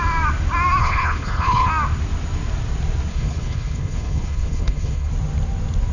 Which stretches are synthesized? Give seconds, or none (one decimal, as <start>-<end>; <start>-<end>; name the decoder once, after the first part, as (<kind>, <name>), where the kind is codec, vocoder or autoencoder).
0.8-1.7 (codec, HILCodec); 3.1-5.1